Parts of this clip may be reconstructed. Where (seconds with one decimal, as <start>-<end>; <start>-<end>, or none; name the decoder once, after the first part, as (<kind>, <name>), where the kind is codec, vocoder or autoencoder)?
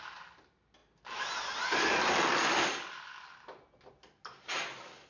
none